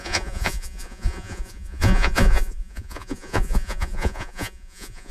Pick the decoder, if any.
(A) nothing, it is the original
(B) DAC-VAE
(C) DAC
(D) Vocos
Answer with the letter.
D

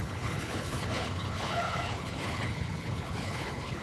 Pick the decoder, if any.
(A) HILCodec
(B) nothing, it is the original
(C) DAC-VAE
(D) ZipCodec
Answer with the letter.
A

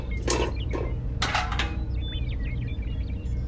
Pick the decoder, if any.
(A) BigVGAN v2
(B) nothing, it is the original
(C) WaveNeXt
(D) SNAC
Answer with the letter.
B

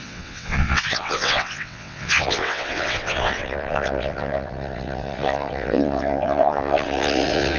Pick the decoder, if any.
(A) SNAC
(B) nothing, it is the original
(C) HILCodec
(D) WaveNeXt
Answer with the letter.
D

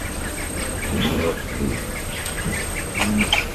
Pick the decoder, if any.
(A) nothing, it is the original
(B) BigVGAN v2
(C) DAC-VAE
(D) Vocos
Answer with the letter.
B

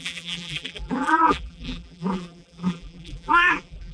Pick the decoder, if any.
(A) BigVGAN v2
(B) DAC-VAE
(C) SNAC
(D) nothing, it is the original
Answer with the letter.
A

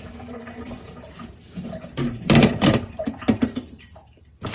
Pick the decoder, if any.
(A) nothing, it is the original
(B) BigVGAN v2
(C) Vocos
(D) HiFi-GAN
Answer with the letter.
B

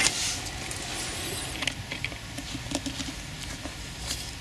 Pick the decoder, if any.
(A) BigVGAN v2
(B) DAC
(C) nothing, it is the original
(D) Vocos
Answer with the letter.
C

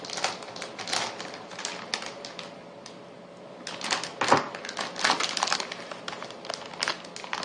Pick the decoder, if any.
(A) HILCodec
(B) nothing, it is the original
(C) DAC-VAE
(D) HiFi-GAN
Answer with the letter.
B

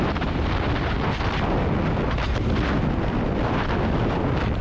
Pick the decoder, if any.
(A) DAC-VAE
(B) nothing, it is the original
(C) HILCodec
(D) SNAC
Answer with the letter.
B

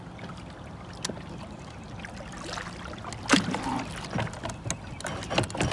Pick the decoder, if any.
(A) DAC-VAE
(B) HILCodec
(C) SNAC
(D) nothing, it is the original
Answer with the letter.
D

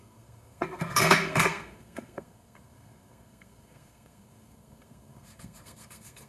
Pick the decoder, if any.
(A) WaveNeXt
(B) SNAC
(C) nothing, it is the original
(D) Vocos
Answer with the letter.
B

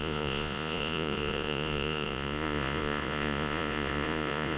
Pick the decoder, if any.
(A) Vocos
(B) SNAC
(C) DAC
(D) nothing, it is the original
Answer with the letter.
A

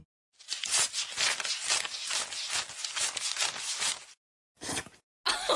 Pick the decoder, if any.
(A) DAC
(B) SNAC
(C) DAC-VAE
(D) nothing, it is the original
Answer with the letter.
D